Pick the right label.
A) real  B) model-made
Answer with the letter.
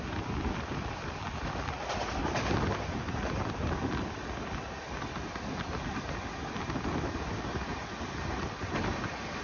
A